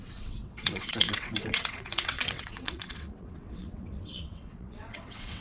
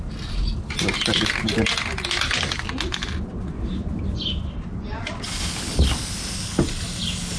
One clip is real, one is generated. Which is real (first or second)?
second